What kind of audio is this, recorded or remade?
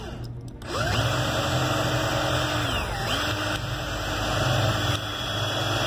recorded